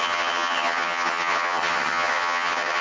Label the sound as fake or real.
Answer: fake